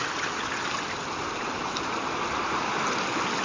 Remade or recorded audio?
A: recorded